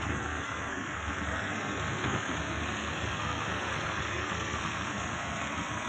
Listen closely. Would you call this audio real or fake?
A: fake